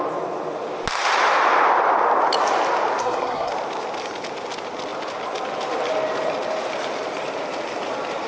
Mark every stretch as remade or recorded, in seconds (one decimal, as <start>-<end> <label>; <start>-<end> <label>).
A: 0.0-3.0 recorded; 3.0-3.5 remade; 3.5-8.3 recorded